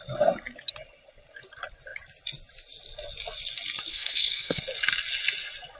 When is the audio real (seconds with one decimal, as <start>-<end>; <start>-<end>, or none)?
0.0-3.9; 4.6-5.8